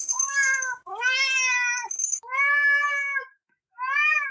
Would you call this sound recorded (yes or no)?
no